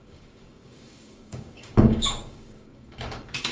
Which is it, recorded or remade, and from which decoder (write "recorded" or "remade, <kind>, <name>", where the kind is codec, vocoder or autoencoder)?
remade, codec, DAC